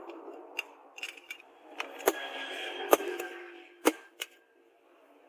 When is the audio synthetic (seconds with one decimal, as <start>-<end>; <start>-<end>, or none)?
0.0-0.8; 2.5-5.3